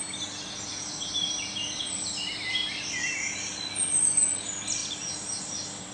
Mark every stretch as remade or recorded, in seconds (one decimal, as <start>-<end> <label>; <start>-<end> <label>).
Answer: 0.0-0.7 recorded; 0.7-2.9 remade; 2.9-4.8 recorded; 4.8-5.4 remade; 5.4-5.9 recorded

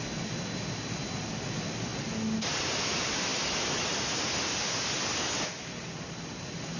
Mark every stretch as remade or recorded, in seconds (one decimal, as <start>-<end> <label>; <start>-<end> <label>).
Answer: 0.0-6.8 recorded

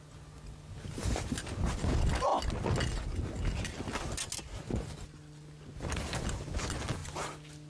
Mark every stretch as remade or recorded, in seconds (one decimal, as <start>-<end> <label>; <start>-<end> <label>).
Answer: 0.0-7.7 recorded

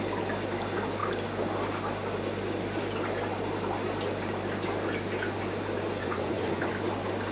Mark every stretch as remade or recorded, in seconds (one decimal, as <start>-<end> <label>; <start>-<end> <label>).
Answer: 0.0-6.0 recorded; 6.0-6.7 remade; 6.7-7.3 recorded

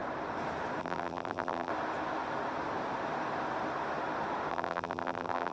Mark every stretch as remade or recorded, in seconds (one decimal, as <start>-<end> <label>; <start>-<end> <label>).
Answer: 0.0-0.8 recorded; 0.8-1.7 remade; 1.7-4.5 recorded; 4.5-5.5 remade

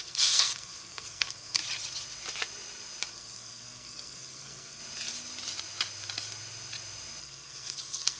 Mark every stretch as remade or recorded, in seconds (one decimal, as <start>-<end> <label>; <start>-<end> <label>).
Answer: 0.0-1.6 remade; 1.6-3.1 recorded; 3.1-4.8 remade; 4.8-7.2 recorded; 7.2-8.2 remade

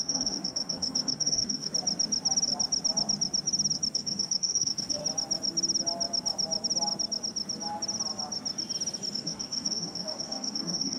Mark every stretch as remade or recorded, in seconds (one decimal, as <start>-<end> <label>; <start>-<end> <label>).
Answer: 0.0-1.7 remade; 1.7-3.9 recorded; 3.9-5.0 remade; 5.0-9.1 recorded; 9.1-11.0 remade